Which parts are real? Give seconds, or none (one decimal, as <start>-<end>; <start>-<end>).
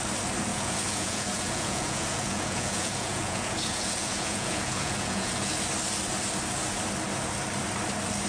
0.0-0.5; 5.5-8.3